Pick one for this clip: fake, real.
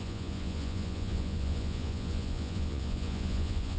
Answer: fake